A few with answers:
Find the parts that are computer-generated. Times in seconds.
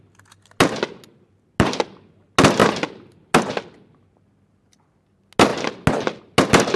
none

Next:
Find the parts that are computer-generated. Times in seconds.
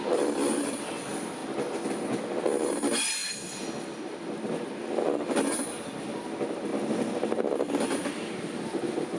none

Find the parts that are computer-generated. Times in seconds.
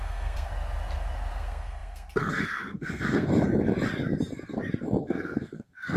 0.0-0.5 (codec, SNAC); 1.3-3.3; 5.0-6.0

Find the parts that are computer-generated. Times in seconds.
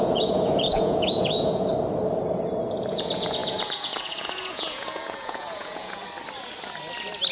0.0-1.7 (vocoder, Vocos); 2.9-6.0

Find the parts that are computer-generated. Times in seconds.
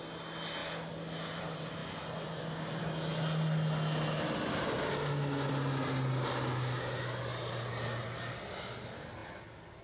none